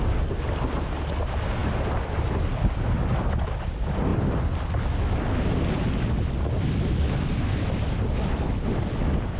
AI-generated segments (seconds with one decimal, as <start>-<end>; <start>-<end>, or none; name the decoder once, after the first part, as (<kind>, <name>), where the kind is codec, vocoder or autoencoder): none